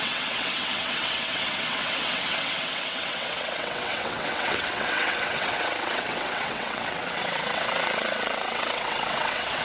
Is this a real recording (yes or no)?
no